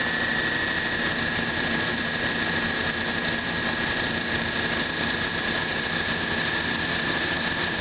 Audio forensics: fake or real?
real